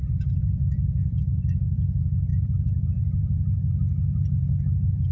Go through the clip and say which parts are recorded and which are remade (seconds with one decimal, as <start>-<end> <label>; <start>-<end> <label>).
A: 0.0-5.1 remade